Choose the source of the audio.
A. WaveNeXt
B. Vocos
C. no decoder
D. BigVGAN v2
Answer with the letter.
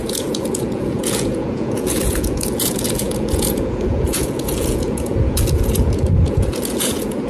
B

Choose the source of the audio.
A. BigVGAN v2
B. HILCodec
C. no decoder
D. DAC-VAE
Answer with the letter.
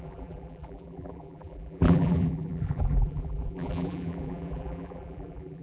A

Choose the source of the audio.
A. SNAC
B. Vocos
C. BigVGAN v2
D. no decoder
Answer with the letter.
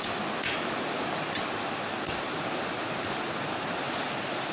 D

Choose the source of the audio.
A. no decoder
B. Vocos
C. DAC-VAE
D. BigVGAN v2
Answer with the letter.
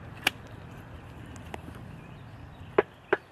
A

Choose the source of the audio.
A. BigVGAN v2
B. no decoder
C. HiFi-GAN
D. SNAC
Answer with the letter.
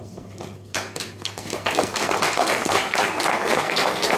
D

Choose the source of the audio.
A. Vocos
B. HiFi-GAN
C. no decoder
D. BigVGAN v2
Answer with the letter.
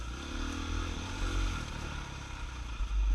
C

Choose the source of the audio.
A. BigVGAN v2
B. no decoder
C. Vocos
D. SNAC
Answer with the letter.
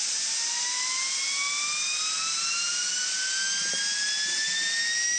B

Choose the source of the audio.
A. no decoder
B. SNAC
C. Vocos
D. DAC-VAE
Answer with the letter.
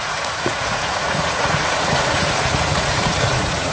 C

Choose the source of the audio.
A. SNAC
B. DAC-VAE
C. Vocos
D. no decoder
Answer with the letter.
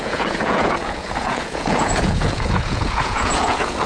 C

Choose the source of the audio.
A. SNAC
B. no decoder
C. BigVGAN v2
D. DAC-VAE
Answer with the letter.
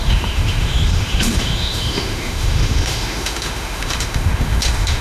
D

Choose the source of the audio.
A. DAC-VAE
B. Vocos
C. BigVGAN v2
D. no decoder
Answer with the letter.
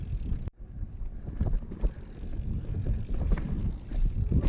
D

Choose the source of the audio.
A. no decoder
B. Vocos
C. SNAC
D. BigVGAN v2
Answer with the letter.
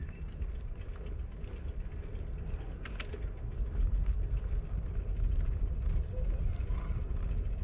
D